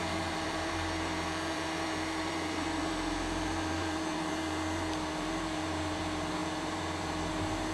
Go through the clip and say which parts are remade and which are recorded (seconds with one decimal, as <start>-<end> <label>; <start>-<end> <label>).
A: 0.0-7.7 remade